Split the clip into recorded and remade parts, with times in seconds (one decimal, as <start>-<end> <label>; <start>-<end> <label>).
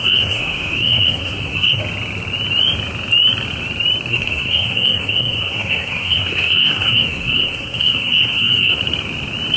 0.0-1.8 remade; 1.8-4.1 recorded; 4.1-8.8 remade; 8.8-9.6 recorded